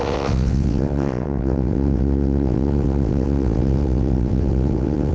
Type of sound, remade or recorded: remade